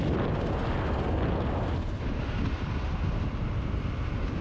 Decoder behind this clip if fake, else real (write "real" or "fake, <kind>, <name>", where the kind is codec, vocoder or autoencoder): real